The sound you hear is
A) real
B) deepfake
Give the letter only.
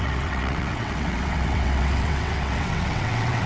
B